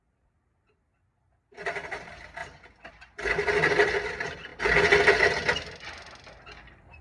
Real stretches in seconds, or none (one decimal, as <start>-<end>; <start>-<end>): 0.0-7.0